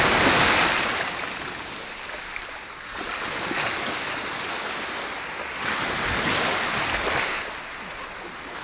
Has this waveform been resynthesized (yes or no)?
no